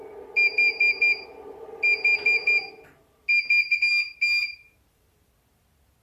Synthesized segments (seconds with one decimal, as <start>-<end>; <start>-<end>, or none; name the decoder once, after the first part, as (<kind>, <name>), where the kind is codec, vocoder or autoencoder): 4.4-5.3 (vocoder, BigVGAN v2)